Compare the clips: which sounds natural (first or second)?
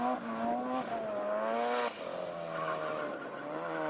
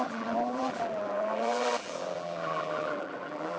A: first